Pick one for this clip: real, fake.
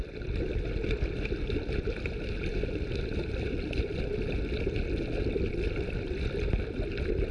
real